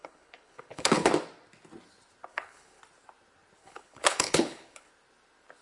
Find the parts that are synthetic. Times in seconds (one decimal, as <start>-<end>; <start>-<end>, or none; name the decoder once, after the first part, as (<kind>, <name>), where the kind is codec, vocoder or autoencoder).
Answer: 0.0-1.1 (codec, HILCodec); 2.3-2.8; 3.6-4.9